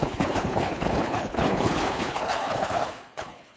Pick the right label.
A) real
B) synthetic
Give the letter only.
B